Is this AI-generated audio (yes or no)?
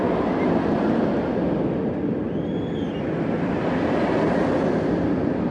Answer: no